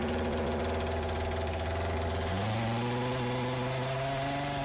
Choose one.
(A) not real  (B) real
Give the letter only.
B